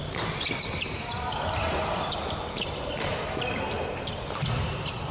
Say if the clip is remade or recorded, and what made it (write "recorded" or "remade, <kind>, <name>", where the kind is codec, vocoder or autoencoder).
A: recorded